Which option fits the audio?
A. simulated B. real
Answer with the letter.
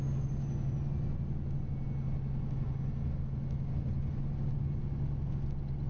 B